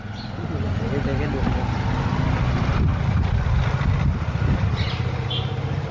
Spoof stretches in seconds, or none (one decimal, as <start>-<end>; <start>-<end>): none